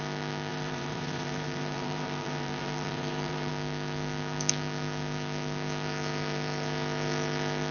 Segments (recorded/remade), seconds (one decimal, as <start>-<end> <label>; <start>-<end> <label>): 0.0-0.5 recorded; 0.5-3.5 remade; 3.5-7.7 recorded